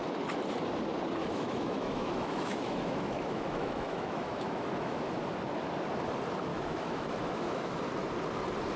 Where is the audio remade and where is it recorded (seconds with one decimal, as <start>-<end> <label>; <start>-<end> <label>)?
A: 0.0-1.2 recorded; 1.2-5.0 remade; 5.0-6.5 recorded; 6.5-7.8 remade; 7.8-8.8 recorded